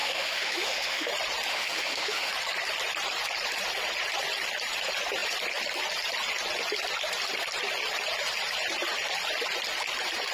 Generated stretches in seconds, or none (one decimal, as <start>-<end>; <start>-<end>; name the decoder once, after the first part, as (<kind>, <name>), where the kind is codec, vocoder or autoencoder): 0.0-1.1 (autoencoder, DAC-VAE); 1.5-2.3